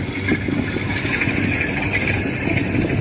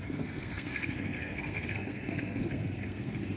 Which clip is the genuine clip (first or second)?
first